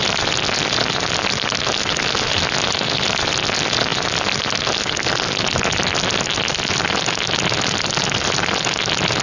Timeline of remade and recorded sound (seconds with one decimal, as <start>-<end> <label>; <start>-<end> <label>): 0.0-9.2 recorded